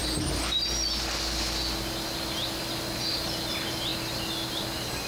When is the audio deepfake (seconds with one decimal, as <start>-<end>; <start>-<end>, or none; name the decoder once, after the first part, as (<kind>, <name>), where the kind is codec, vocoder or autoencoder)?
none